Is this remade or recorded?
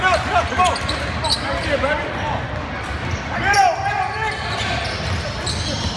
recorded